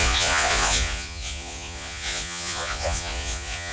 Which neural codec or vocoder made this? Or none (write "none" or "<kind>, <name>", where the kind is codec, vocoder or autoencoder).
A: vocoder, Vocos